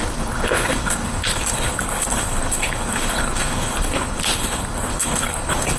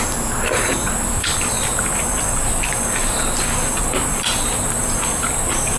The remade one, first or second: first